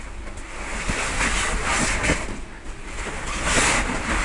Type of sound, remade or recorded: recorded